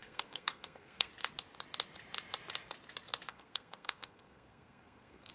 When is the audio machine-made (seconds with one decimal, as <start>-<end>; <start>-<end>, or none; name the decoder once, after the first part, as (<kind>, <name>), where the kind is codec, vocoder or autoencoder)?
0.0-1.1 (codec, SNAC); 3.3-5.3